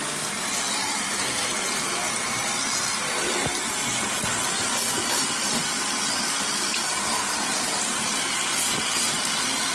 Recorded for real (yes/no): yes